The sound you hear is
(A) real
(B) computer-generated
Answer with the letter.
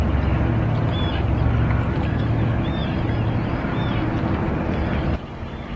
A